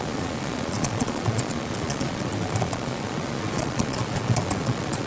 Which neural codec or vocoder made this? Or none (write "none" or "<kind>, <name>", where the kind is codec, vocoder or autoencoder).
vocoder, Vocos